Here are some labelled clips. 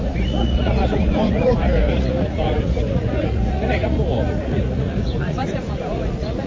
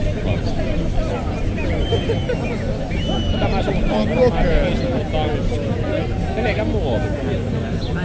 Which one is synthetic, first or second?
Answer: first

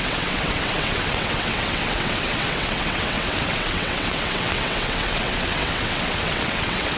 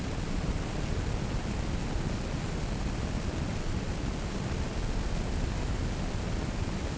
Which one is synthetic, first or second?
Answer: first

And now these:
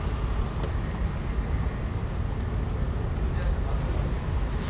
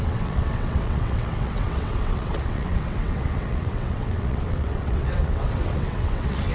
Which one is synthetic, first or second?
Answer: second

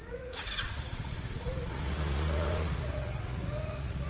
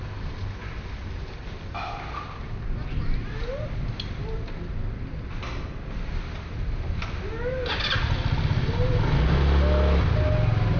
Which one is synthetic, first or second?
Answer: first